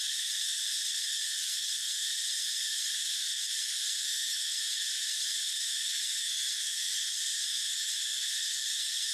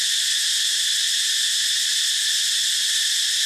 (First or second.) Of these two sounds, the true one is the second